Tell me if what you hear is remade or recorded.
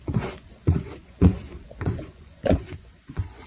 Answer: remade